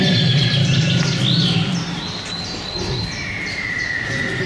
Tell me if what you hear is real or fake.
real